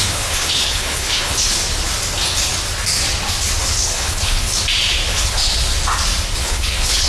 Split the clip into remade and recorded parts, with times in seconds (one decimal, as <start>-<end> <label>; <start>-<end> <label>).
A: 0.0-1.6 remade; 1.6-3.6 recorded; 3.6-4.5 remade; 4.5-5.1 recorded; 5.1-5.5 remade; 5.5-6.4 recorded; 6.4-7.1 remade